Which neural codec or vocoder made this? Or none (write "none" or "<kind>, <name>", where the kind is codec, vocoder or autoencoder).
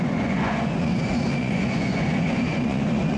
vocoder, Vocos